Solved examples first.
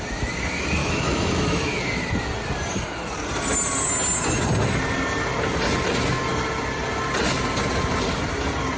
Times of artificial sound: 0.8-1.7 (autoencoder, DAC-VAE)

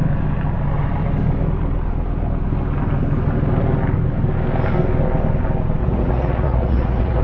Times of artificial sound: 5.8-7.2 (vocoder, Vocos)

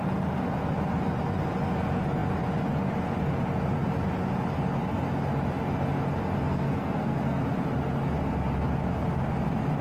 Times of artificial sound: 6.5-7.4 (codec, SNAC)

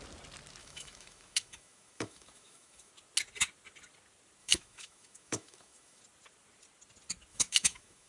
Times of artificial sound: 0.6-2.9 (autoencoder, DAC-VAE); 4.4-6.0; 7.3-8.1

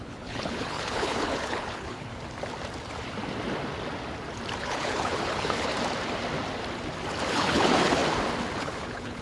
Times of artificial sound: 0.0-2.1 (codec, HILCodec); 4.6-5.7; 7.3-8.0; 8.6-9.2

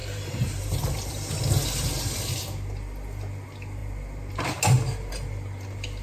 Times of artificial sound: 0.0-1.3 (vocoder, BigVGAN v2)

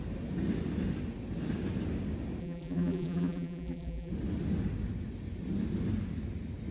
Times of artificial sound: 2.4-4.1 (vocoder, BigVGAN v2)